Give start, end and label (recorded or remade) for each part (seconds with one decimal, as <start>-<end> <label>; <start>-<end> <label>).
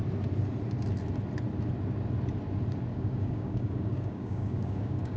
0.0-2.9 recorded; 2.9-5.2 remade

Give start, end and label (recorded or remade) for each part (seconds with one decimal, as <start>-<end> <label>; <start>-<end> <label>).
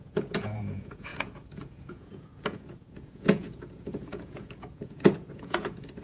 0.0-6.0 remade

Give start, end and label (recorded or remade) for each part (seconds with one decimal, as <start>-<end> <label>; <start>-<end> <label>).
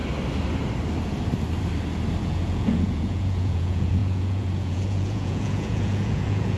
0.0-2.2 recorded; 2.2-6.6 remade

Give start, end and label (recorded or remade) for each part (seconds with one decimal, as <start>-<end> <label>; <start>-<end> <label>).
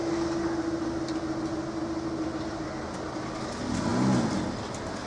0.0-5.1 recorded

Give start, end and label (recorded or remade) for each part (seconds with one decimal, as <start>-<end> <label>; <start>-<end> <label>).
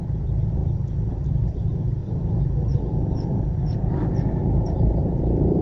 0.0-0.6 remade; 0.6-1.1 recorded; 1.1-2.0 remade; 2.0-4.4 recorded; 4.4-5.6 remade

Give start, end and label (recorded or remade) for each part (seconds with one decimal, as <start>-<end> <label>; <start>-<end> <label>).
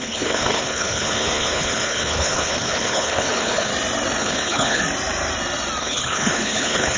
0.0-3.7 remade; 3.7-4.2 recorded; 4.2-4.8 remade; 4.8-5.8 recorded; 5.8-7.0 remade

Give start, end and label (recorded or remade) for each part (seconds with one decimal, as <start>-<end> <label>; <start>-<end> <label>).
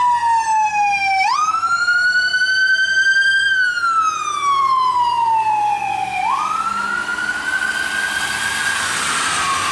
0.0-1.4 recorded; 1.4-6.6 remade; 6.6-9.7 recorded